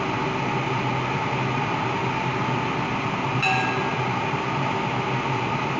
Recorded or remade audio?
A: recorded